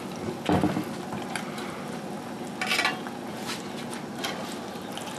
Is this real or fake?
real